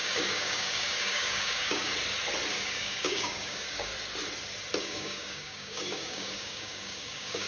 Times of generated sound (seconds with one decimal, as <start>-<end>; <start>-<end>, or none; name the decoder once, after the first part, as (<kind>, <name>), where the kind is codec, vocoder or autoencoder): 0.0-1.9 (codec, DAC); 2.5-3.9; 4.8-7.5